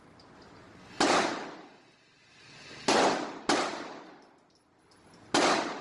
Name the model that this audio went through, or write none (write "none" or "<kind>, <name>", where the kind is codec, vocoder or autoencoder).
none